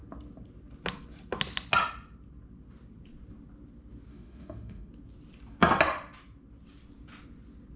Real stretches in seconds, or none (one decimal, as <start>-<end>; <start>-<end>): 0.0-4.1; 4.9-7.8